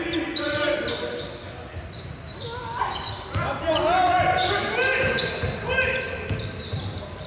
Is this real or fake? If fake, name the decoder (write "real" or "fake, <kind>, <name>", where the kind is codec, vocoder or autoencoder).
real